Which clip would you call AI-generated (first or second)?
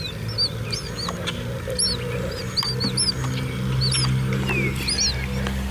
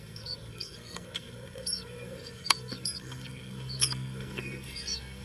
second